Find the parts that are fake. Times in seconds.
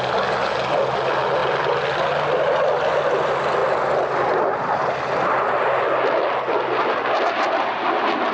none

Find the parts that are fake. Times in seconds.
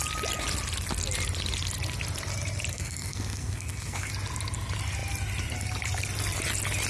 2.7-4.1 (codec, SNAC)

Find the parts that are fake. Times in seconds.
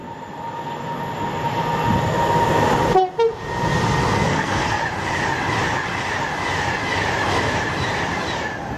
4.3-4.8 (codec, SNAC)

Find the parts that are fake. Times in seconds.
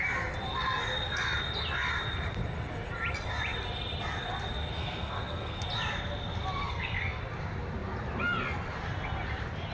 4.8-5.6 (codec, SNAC); 6.6-7.2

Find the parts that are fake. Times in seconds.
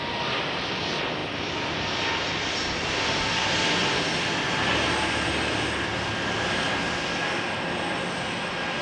none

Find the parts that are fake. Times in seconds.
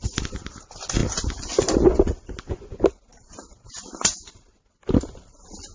none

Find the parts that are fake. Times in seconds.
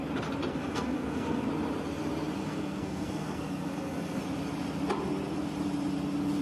0.5-1.5 (codec, SNAC); 2.4-4.2